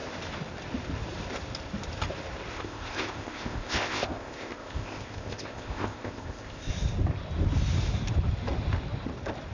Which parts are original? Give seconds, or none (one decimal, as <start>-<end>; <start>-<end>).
0.0-2.5; 6.7-9.5